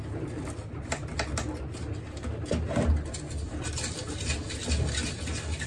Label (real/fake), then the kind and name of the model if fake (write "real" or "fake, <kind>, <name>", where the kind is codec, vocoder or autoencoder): real